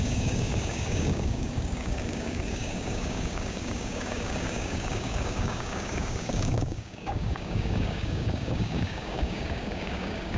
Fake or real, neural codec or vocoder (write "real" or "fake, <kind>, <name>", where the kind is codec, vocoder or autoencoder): fake, codec, DAC